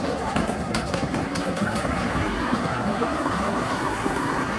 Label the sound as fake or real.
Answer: fake